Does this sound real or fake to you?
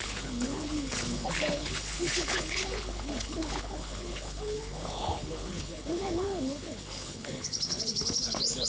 fake